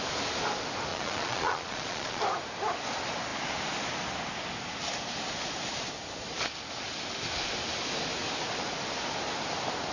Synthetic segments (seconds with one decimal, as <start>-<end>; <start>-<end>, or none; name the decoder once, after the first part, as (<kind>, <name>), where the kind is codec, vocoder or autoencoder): 0.9-2.2 (vocoder, Vocos)